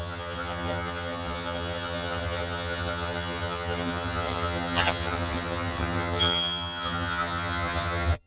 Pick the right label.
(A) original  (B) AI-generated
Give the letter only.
B